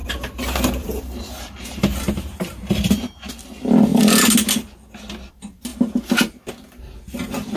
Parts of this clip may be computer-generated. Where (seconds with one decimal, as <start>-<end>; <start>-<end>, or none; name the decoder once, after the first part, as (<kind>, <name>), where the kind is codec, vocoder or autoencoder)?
0.0-3.3 (vocoder, BigVGAN v2)